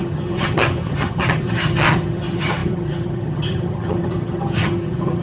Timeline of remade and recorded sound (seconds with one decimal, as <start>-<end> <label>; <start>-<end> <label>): 0.0-5.2 remade